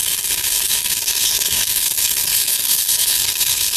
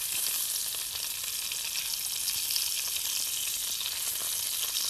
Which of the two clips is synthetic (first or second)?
first